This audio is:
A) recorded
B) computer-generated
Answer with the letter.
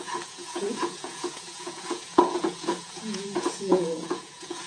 B